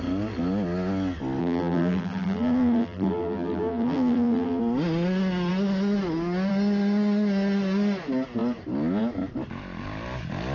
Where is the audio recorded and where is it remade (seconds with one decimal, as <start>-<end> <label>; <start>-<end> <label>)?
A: 0.0-1.4 recorded; 1.4-4.6 remade; 4.6-10.5 recorded